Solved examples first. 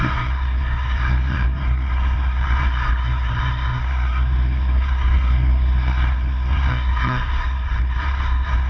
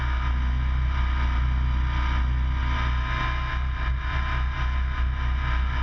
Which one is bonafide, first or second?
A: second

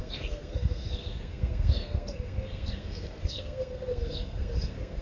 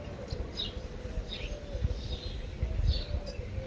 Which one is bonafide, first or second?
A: second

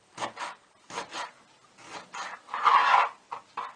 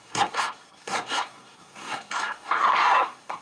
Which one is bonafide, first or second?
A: first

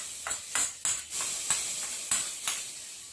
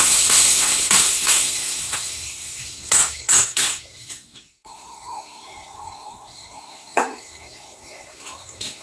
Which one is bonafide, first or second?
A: first